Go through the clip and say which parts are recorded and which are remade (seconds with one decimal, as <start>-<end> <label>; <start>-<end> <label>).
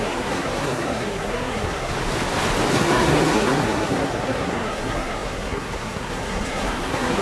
0.0-1.9 remade; 1.9-2.7 recorded; 2.7-7.2 remade